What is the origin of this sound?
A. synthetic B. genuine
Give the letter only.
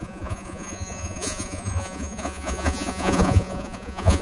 A